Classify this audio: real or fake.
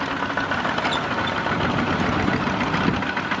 real